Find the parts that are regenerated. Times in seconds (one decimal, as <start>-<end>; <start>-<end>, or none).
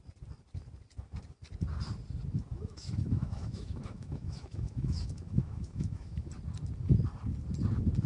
2.5-6.3